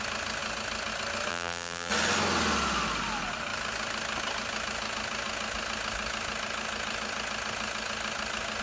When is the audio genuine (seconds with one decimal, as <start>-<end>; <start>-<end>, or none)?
0.0-1.3; 1.9-8.6